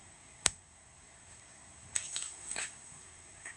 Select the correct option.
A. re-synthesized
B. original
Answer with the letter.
A